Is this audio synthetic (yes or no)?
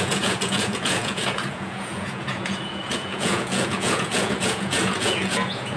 yes